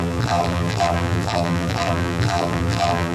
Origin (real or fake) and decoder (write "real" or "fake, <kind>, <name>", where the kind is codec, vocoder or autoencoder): fake, vocoder, BigVGAN v2